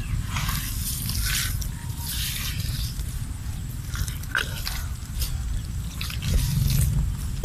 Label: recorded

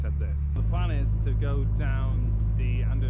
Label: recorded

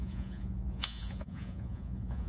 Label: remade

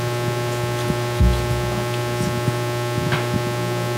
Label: recorded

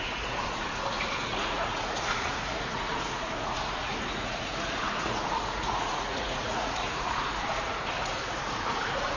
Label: remade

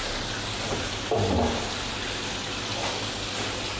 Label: recorded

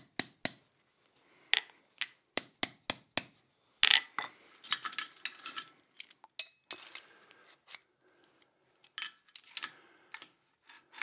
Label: recorded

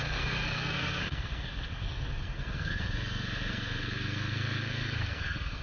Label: remade